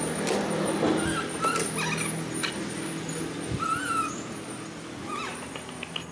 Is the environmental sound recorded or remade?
recorded